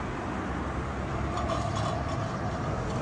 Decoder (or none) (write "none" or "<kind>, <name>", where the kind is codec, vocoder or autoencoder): none